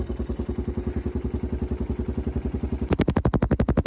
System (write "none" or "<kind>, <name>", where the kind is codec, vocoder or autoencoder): none